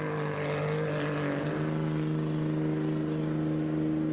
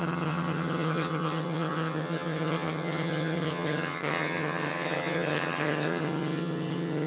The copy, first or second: second